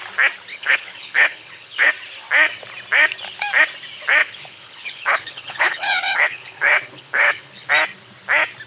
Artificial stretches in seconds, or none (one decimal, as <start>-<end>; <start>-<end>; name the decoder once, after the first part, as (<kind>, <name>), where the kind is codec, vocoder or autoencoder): 0.5-1.9 (codec, HILCodec); 4.2-7.7